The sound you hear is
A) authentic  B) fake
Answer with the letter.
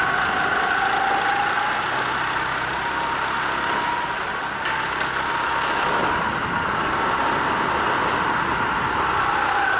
A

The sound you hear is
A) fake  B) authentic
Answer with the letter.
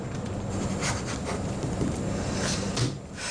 B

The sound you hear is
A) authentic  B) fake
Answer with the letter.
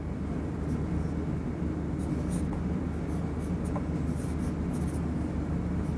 A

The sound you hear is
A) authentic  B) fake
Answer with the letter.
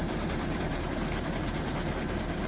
B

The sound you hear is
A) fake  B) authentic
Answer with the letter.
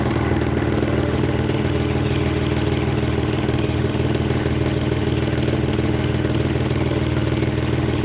A